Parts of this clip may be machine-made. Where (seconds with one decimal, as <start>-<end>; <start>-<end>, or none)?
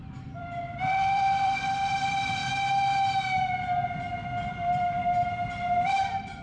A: 0.0-2.4; 4.5-5.0; 5.5-6.4